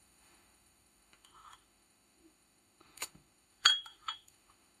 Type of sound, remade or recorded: remade